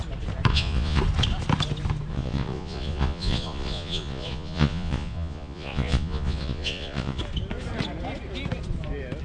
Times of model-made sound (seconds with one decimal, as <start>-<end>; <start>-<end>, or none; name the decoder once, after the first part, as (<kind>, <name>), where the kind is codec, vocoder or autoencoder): 0.5-1.0 (vocoder, Vocos); 2.1-7.2